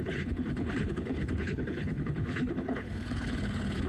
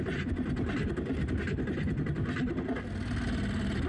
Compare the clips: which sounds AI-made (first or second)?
first